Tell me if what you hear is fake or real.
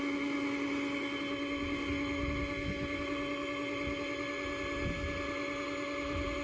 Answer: real